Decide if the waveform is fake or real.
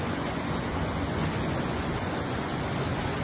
fake